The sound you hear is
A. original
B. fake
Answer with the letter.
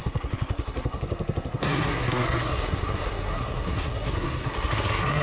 B